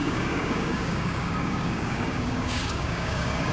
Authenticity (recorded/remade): remade